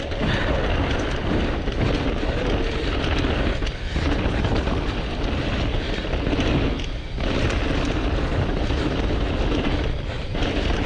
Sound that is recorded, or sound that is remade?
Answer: recorded